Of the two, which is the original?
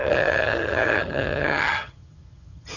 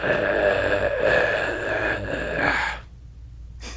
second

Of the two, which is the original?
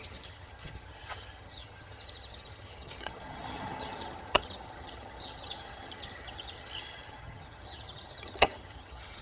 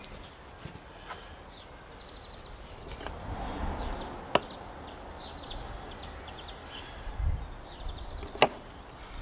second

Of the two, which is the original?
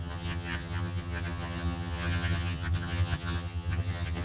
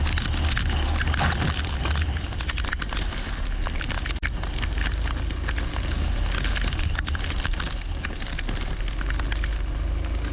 second